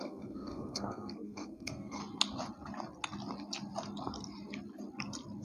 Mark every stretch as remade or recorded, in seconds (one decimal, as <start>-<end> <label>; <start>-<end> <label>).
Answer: 0.0-2.0 remade; 2.0-5.4 recorded